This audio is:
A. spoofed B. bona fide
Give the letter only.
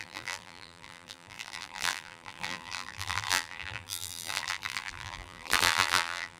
A